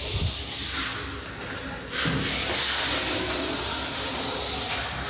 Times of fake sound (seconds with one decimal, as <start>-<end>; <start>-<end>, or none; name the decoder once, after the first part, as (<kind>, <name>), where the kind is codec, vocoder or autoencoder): none